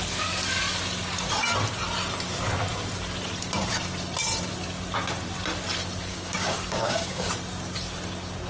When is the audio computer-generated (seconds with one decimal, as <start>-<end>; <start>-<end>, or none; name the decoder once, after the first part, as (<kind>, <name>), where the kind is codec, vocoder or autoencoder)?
6.1-7.3 (codec, DAC)